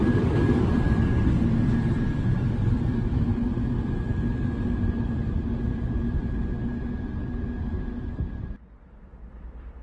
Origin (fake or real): real